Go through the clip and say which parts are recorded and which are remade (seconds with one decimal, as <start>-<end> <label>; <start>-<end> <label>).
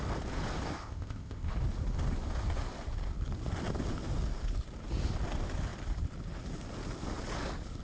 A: 0.0-0.8 recorded; 0.8-1.5 remade; 1.5-7.8 recorded